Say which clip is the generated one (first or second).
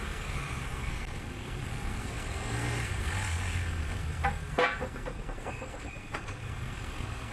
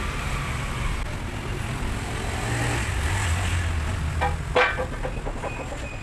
first